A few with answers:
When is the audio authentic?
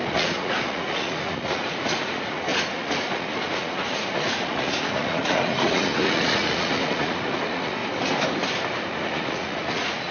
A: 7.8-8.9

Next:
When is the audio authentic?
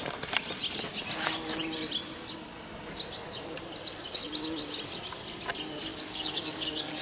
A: 0.0-5.9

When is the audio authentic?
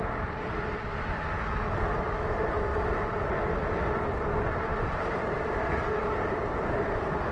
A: 0.0-2.7; 3.3-4.7